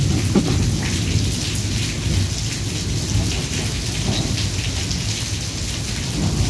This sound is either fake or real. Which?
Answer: real